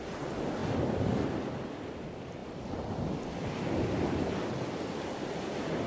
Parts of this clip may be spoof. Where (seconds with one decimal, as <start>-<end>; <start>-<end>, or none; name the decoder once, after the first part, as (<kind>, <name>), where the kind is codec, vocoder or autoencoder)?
none